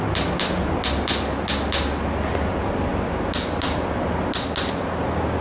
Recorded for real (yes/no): yes